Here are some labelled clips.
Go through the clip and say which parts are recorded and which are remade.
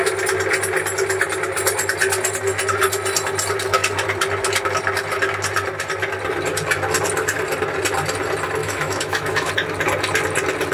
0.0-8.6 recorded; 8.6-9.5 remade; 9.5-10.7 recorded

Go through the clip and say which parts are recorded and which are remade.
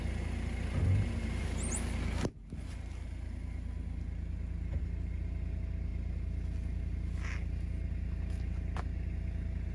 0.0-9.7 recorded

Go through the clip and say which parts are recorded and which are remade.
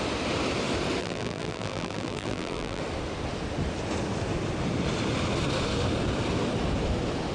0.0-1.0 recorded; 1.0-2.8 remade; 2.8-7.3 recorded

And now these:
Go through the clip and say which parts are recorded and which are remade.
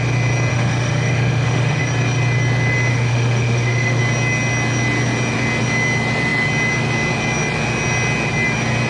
0.0-0.5 recorded; 0.5-1.8 remade; 1.8-2.9 recorded; 2.9-4.0 remade; 4.0-8.9 recorded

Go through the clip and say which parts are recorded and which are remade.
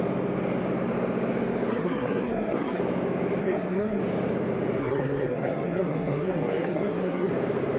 0.0-1.7 recorded; 1.7-2.8 remade; 2.8-3.4 recorded; 3.4-4.0 remade; 4.0-4.8 recorded; 4.8-7.3 remade; 7.3-7.8 recorded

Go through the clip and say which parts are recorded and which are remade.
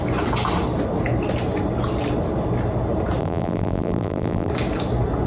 0.0-3.2 recorded; 3.2-4.5 remade; 4.5-5.3 recorded